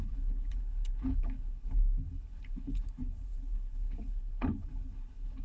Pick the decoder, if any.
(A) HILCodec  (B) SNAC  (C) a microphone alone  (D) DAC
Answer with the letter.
A